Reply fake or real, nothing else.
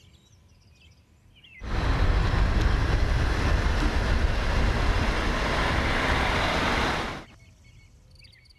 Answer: real